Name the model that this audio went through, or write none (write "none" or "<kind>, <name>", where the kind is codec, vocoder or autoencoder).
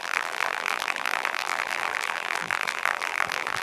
vocoder, BigVGAN v2